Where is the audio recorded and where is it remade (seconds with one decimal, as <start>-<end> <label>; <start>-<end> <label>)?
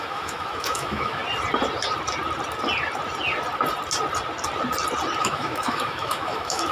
0.0-1.2 remade; 1.2-5.2 recorded; 5.2-6.7 remade